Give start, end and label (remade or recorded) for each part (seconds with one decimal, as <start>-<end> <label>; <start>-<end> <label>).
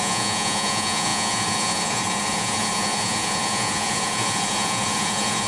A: 0.0-5.5 remade